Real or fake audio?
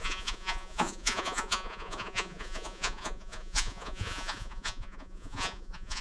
fake